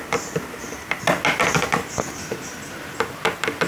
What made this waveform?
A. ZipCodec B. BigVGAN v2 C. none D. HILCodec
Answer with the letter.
C